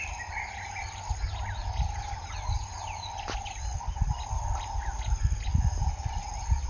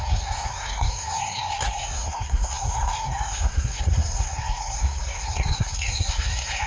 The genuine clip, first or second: first